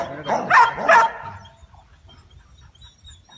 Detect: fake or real real